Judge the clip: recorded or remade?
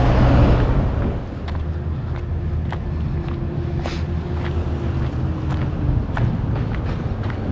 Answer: recorded